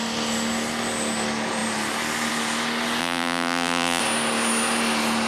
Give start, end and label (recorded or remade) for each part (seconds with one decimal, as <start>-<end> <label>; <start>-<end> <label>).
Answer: 0.0-3.0 recorded; 3.0-4.0 remade; 4.0-5.3 recorded